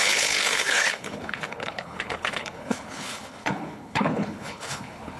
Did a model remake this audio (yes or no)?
yes